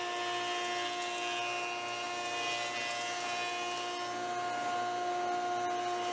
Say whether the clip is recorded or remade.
recorded